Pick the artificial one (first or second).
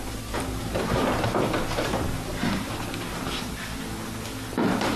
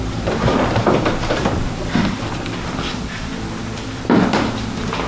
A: second